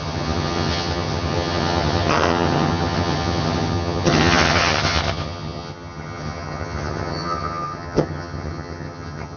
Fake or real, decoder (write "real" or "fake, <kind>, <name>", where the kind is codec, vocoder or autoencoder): fake, vocoder, HiFi-GAN